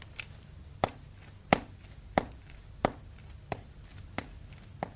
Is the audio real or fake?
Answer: real